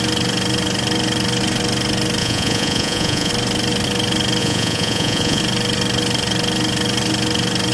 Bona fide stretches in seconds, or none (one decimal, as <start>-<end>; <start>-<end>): 0.0-2.2; 3.3-4.4; 5.4-7.7